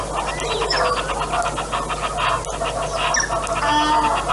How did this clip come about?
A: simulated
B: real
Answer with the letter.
B